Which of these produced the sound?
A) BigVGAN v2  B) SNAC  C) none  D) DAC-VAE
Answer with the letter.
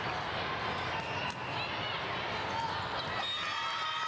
C